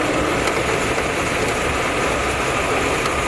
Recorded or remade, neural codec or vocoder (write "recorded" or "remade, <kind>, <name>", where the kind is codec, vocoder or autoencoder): recorded